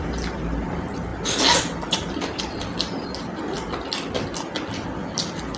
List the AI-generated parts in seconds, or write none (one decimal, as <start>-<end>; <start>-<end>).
none